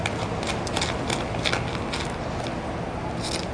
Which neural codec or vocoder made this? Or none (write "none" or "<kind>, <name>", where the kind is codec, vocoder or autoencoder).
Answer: none